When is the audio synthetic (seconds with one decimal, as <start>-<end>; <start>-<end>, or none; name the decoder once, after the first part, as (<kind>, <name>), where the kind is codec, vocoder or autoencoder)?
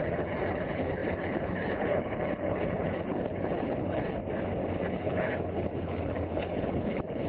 0.0-4.2 (codec, HILCodec); 4.9-7.3